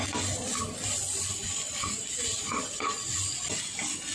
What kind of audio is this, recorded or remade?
recorded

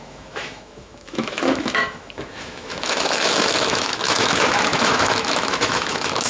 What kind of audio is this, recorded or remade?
remade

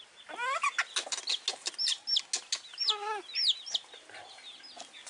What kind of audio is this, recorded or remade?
recorded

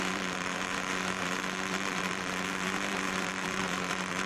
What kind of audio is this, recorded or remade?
remade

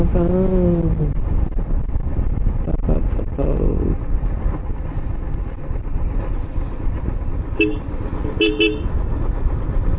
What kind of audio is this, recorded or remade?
recorded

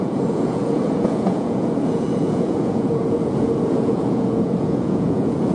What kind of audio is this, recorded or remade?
remade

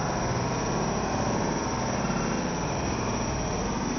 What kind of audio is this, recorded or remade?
remade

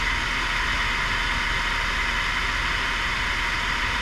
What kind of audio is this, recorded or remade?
recorded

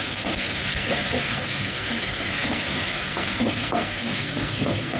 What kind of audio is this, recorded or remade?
remade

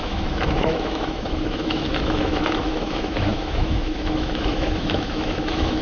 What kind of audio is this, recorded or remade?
remade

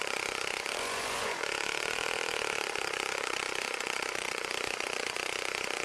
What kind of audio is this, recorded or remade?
remade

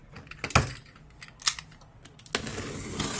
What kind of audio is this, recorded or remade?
recorded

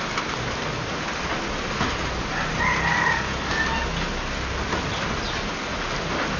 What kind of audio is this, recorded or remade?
recorded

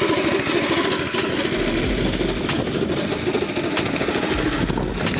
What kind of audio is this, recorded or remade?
recorded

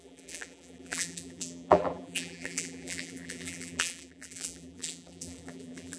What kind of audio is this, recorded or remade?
remade